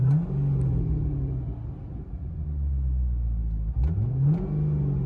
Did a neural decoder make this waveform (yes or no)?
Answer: no